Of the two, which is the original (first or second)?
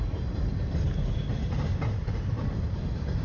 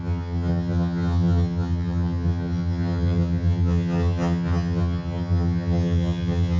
first